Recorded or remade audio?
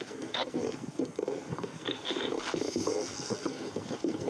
remade